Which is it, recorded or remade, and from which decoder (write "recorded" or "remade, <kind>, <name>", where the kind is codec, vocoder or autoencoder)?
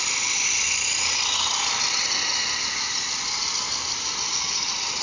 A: recorded